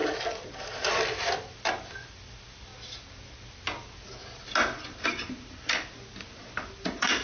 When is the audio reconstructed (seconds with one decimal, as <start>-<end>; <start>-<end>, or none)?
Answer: 0.6-2.7